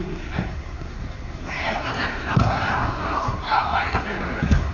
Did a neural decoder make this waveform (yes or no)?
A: yes